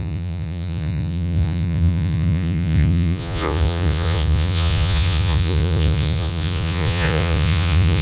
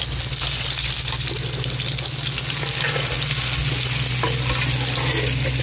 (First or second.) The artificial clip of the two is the first